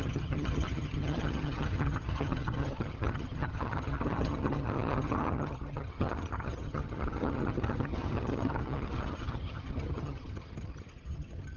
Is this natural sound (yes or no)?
no